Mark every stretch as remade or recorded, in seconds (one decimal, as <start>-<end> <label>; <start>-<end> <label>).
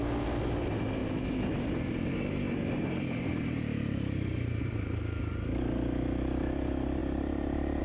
0.0-1.0 recorded; 1.0-5.0 remade; 5.0-7.0 recorded; 7.0-7.8 remade